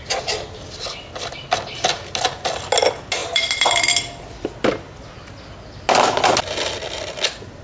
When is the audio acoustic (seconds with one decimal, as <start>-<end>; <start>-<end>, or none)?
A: 0.0-3.2; 4.4-7.6